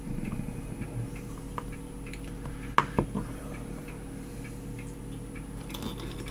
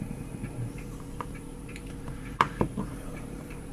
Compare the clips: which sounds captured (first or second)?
first